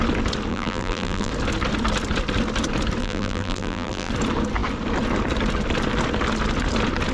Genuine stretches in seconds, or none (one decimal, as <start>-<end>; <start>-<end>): 0.0-0.5; 1.3-3.0; 4.1-7.1